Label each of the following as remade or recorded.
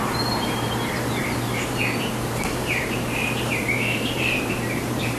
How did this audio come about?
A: remade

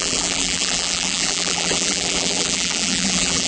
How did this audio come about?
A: remade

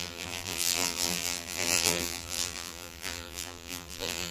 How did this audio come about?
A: remade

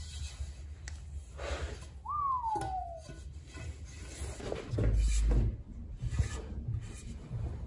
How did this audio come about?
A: recorded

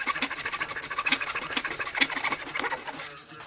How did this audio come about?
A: recorded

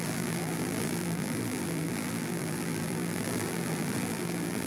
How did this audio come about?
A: remade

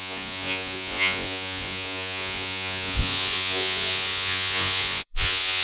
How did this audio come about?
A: remade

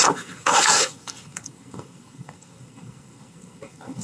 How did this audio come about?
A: remade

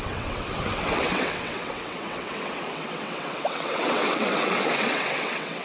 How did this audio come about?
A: remade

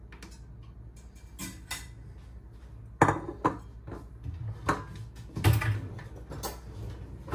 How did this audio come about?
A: recorded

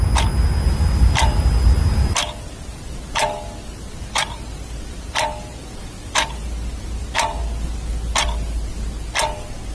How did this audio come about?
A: recorded